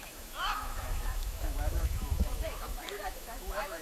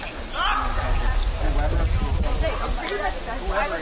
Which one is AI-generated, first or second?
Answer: first